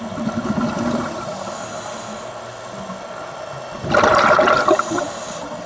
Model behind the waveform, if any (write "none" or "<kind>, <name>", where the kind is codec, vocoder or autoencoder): none